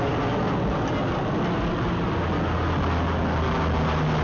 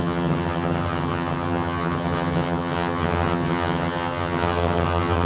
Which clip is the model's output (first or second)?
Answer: second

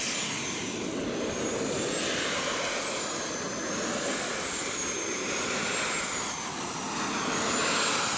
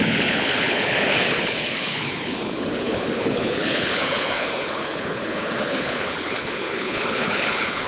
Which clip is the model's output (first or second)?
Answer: second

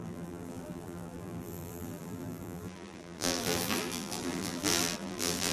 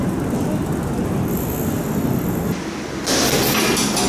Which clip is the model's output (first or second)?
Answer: first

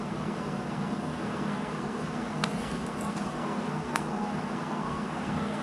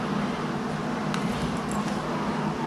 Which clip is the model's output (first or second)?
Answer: first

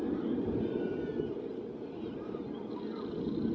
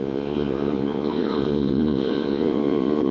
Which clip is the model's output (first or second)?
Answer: second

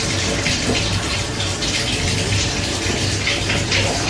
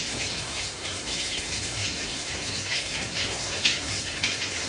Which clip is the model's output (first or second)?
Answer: second